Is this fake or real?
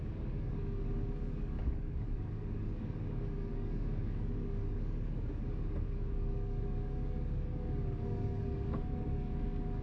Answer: fake